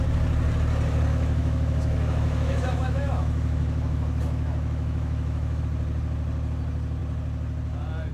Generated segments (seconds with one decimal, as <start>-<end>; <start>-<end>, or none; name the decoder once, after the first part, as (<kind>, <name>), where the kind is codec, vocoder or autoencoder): 1.1-5.6 (autoencoder, DAC-VAE)